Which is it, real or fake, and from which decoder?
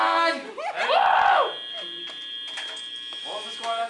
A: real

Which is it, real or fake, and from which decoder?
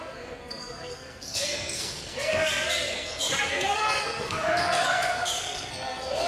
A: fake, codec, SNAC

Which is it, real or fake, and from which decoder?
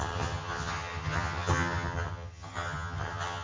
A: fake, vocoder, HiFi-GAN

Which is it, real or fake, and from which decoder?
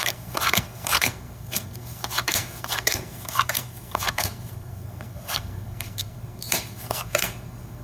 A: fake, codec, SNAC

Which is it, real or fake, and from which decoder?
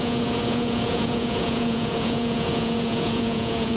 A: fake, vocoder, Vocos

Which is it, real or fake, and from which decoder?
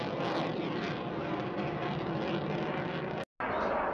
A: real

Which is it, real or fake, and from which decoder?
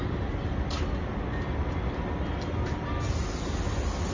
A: real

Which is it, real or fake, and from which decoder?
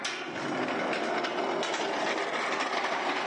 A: real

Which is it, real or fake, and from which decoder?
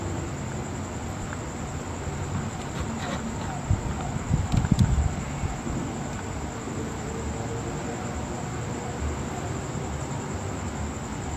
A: real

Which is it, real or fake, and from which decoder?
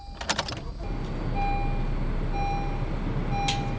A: real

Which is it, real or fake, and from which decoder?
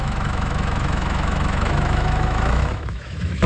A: fake, autoencoder, DAC-VAE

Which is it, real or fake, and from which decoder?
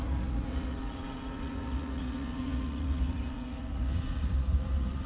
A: fake, vocoder, Vocos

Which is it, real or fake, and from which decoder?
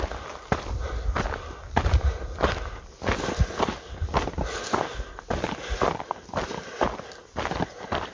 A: real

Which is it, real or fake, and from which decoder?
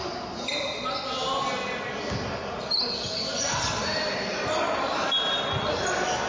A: real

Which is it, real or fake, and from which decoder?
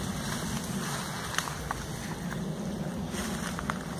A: real